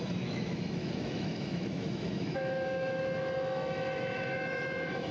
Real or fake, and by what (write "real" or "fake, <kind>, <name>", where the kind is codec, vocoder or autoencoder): fake, autoencoder, DAC-VAE